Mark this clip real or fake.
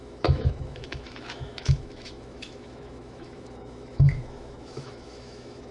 fake